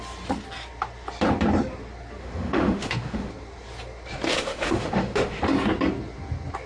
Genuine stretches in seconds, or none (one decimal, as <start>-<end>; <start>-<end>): 0.0-2.2; 3.3-4.3; 5.4-6.7